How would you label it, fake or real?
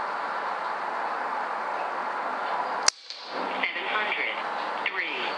real